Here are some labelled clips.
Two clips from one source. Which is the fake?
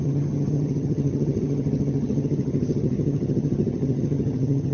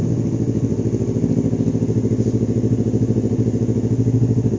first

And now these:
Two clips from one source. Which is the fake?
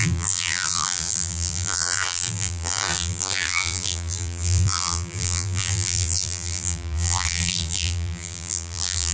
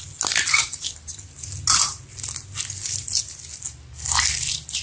first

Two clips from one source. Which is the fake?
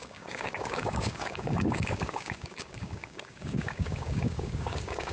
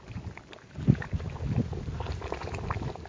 first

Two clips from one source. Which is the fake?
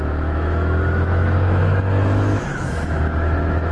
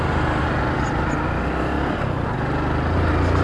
first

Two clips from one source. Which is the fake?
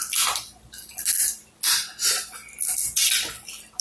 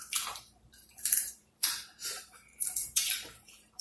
second